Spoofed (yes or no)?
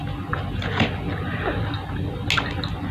no